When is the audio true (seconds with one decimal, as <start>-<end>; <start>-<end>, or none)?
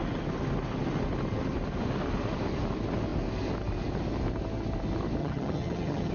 0.0-5.2